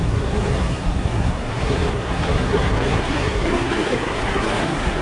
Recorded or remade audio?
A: remade